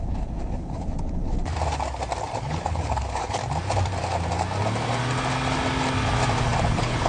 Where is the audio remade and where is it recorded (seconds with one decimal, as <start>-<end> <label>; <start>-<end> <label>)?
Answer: 0.0-1.5 remade; 1.5-2.4 recorded; 2.4-3.4 remade; 3.4-6.6 recorded; 6.6-7.1 remade